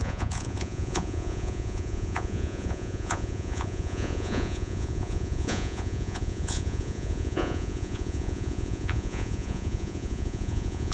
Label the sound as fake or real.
fake